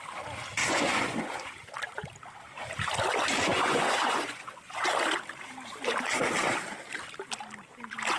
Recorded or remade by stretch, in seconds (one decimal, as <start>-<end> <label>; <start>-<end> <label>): 0.0-0.6 recorded; 0.6-1.5 remade; 1.5-3.5 recorded; 3.5-4.9 remade; 4.9-8.2 recorded